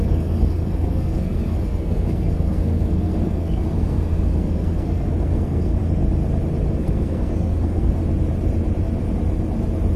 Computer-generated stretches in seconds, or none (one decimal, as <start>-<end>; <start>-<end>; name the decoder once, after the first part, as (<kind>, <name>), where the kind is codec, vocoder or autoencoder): 0.0-5.8 (codec, SNAC); 6.8-8.0